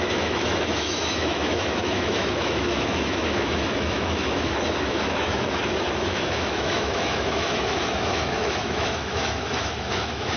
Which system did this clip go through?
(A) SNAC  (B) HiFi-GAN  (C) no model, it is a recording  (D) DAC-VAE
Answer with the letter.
D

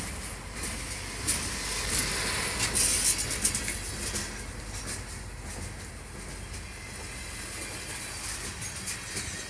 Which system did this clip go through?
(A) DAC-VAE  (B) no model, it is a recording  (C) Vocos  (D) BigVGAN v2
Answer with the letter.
B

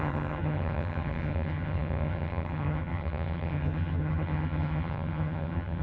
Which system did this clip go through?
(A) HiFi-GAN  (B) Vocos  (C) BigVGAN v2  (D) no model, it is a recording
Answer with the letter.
A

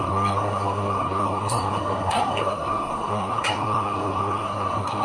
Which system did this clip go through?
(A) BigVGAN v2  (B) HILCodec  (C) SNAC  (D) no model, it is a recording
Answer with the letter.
C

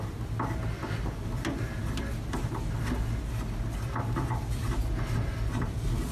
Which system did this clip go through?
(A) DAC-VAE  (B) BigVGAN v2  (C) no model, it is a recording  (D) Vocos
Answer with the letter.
C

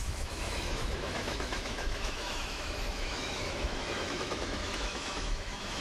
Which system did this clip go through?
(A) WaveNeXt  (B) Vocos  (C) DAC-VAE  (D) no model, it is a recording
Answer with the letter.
C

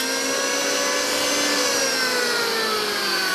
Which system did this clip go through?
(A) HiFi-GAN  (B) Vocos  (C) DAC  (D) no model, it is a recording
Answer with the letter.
D